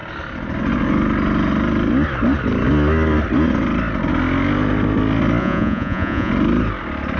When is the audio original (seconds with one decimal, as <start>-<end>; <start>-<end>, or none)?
0.0-5.4; 6.3-7.2